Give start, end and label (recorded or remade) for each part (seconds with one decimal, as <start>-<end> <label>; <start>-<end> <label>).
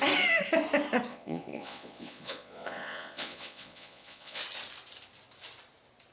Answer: 0.0-1.1 recorded; 1.1-4.4 remade; 4.4-6.1 recorded